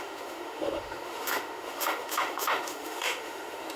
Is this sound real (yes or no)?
no